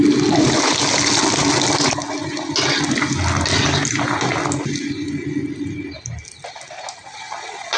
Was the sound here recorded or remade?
recorded